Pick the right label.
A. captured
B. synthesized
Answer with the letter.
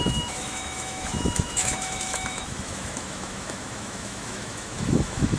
B